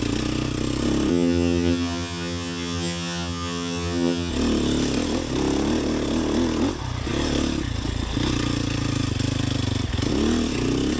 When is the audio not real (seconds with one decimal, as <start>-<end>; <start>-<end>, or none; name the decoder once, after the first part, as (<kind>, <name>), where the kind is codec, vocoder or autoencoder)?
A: 1.1-4.3 (vocoder, HiFi-GAN)